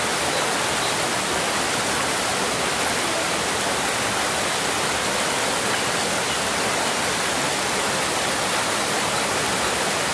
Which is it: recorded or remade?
recorded